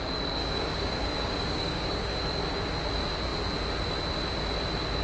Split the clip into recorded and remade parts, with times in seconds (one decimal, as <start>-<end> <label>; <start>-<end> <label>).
0.0-0.4 recorded; 0.4-2.1 remade; 2.1-5.0 recorded